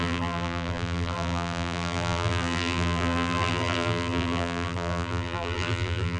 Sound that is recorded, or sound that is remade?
remade